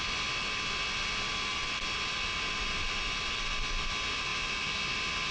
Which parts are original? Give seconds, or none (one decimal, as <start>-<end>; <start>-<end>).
0.0-5.3